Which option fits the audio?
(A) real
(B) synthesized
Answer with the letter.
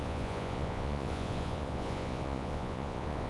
B